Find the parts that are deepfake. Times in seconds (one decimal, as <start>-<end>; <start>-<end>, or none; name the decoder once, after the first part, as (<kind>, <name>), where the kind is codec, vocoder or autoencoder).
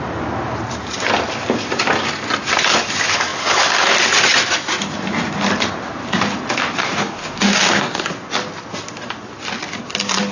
6.8-8.0 (codec, DAC)